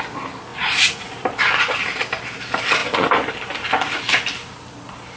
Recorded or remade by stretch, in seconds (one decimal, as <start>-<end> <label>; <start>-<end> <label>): 0.0-0.5 recorded; 0.5-1.1 remade; 1.1-5.2 recorded